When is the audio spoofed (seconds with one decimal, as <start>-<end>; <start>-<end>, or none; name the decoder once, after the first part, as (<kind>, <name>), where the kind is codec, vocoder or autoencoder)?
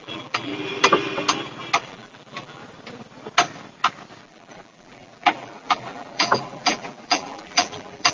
0.0-0.5 (vocoder, BigVGAN v2); 1.8-2.6; 4.2-8.1